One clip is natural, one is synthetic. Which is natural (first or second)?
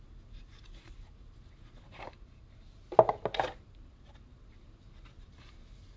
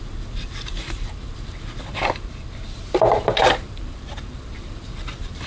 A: first